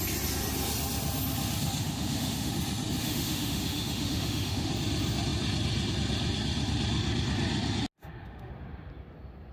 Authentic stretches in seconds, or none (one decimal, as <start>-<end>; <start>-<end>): 0.0-1.8; 2.5-3.0; 4.7-8.0; 8.5-9.5

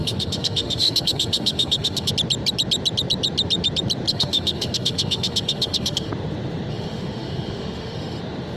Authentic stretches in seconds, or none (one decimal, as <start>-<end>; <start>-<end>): 2.1-4.1; 6.1-6.7; 8.2-8.6

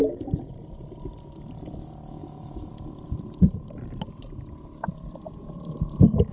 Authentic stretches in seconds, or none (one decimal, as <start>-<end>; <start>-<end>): 0.0-2.2; 2.7-6.3

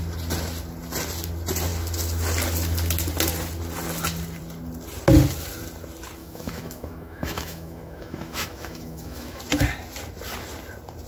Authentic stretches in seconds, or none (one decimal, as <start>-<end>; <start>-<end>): 0.0-6.2; 9.4-11.1

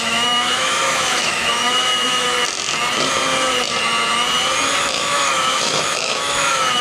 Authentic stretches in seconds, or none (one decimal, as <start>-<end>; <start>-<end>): 2.3-4.8